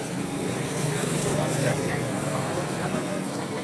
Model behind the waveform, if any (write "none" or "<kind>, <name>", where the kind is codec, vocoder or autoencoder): codec, SNAC